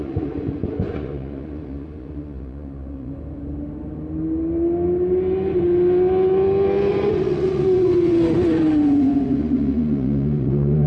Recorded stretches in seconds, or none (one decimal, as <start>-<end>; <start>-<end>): 3.1-6.9